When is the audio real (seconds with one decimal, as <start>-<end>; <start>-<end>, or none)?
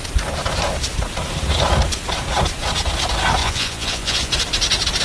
0.0-3.4; 4.3-5.0